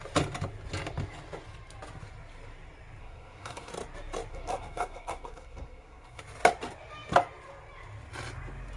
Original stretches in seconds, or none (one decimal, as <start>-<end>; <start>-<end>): 0.0-3.0; 3.7-4.3; 6.2-8.8